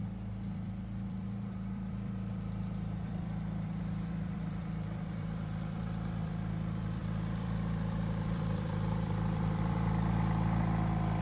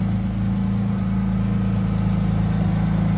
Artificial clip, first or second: first